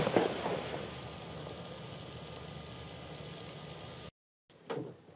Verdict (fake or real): real